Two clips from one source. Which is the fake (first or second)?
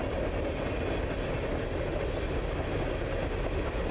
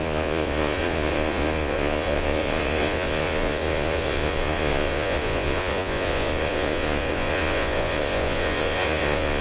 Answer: second